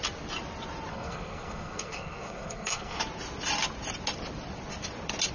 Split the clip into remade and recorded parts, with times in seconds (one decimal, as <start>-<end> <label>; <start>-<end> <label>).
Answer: 0.0-0.9 recorded; 0.9-3.0 remade; 3.0-5.3 recorded